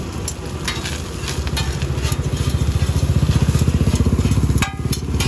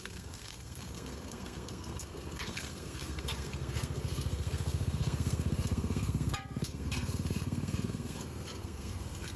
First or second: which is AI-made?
second